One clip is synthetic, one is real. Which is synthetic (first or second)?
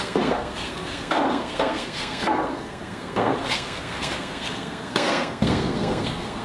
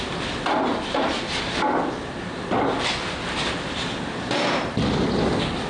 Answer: first